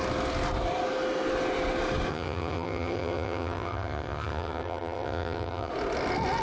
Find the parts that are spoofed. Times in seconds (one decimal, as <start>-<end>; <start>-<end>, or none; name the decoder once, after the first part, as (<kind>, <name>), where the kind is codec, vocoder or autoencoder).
2.1-5.7 (vocoder, HiFi-GAN)